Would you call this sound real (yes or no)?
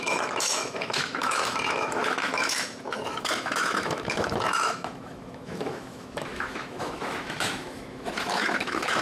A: no